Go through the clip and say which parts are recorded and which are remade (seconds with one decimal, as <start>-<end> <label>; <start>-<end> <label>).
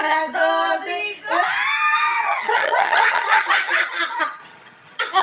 0.0-0.4 remade; 0.4-2.0 recorded; 2.0-5.2 remade